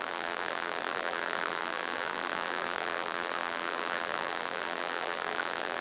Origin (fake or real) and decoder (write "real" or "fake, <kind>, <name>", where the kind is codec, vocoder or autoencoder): fake, vocoder, BigVGAN v2